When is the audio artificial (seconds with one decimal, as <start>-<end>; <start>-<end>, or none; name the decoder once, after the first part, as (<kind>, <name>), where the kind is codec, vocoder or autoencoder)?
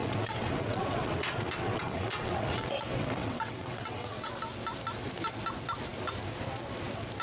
0.0-4.3 (vocoder, WaveNeXt)